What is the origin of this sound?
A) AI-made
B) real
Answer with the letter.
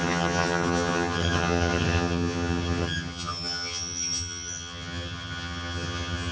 A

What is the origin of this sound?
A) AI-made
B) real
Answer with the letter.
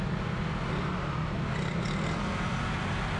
B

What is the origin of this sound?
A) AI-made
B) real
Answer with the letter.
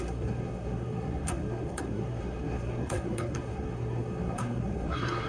A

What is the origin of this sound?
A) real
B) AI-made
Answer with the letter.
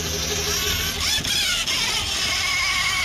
A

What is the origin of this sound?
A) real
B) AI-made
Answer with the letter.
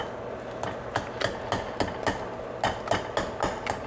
A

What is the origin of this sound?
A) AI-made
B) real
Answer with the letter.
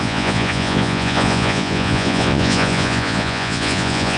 A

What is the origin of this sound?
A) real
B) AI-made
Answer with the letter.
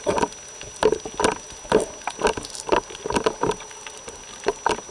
A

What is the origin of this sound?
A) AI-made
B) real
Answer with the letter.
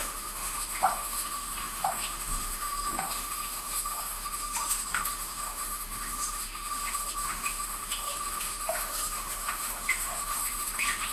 A